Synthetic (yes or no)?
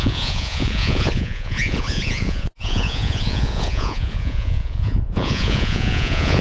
yes